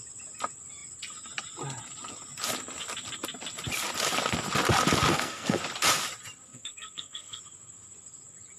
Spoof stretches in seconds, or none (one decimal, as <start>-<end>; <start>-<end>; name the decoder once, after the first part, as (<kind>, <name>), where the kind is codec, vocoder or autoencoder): 5.1-5.6 (codec, SNAC); 6.5-7.4